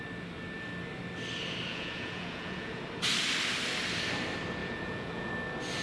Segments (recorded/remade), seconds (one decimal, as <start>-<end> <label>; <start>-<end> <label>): 0.0-1.7 recorded; 1.7-2.8 remade; 2.8-4.6 recorded; 4.6-5.3 remade; 5.3-5.8 recorded

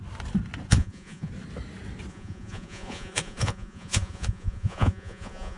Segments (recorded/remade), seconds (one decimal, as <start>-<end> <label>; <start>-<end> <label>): 0.0-0.7 recorded; 0.7-1.3 remade; 1.3-2.1 recorded; 2.1-5.6 remade

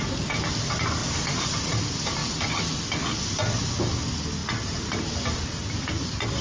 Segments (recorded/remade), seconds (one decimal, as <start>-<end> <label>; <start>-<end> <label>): 0.0-1.0 recorded; 1.0-1.8 remade; 1.8-4.4 recorded; 4.4-5.7 remade; 5.7-6.4 recorded

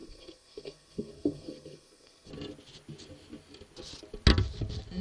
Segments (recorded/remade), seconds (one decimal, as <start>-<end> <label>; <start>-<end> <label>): 0.0-2.3 remade; 2.3-5.0 recorded